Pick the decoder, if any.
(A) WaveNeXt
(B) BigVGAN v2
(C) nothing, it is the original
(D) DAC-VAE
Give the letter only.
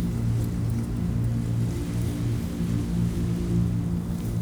C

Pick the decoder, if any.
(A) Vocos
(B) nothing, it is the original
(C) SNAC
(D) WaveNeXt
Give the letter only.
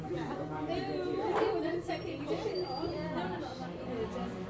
B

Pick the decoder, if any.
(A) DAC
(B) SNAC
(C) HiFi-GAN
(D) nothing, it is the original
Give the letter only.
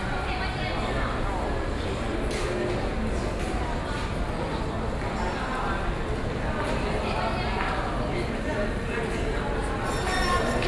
D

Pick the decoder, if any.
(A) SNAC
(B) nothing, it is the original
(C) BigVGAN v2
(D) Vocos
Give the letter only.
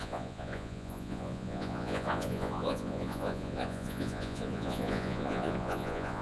D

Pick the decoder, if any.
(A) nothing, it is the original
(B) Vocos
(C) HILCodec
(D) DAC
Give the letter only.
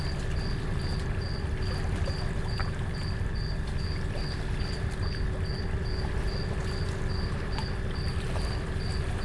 A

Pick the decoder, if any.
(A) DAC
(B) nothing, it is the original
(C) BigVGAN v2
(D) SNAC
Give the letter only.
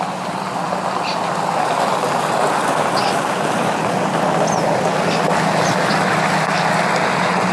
B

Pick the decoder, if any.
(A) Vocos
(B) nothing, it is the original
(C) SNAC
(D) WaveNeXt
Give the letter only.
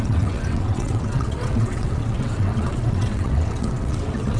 D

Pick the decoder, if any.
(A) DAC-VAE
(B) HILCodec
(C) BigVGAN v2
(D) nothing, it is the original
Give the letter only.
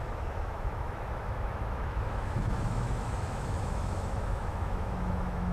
A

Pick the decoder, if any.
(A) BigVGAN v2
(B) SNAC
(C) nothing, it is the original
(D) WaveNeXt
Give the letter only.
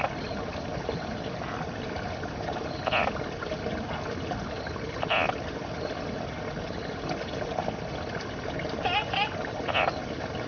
C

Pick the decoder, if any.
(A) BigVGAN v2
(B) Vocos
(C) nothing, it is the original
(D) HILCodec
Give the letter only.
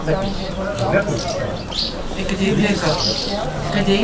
C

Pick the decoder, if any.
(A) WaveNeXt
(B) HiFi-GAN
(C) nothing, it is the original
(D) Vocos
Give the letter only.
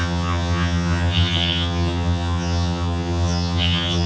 B